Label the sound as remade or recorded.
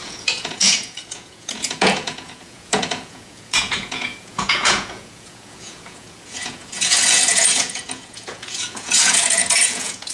remade